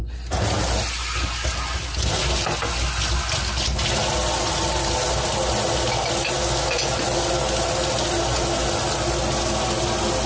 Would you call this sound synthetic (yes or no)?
no